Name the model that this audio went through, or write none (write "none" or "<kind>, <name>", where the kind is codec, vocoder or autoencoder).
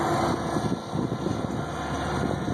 none